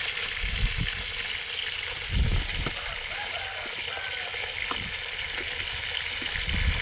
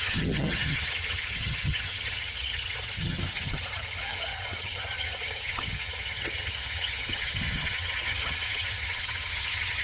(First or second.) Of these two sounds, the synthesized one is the second